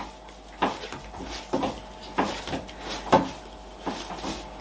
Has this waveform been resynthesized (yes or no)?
no